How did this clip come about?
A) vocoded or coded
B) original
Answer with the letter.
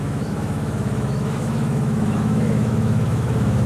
A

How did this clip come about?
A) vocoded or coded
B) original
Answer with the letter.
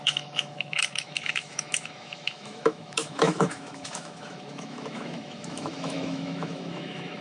A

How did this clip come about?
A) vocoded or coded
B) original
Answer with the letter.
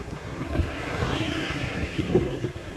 A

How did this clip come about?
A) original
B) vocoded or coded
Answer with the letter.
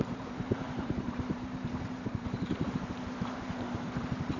B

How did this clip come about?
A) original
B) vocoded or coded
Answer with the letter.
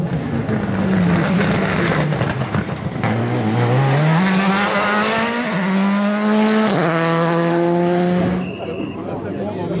A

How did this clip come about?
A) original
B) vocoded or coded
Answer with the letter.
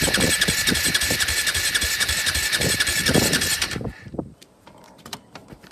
B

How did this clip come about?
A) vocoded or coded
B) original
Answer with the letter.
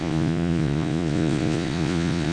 A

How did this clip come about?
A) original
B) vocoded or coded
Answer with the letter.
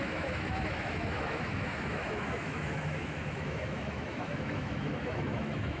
B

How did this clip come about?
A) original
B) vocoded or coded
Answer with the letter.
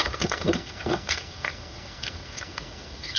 B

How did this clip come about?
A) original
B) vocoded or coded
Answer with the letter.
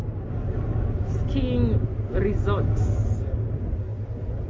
A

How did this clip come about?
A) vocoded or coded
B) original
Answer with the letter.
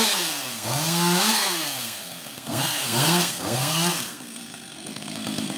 A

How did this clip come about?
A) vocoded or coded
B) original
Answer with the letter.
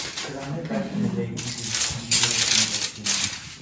B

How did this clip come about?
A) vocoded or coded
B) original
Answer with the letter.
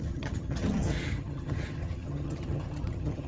A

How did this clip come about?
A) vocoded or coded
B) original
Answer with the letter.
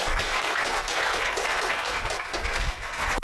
A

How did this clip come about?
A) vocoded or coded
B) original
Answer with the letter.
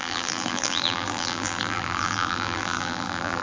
A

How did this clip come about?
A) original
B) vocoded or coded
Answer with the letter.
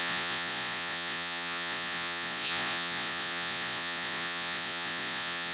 B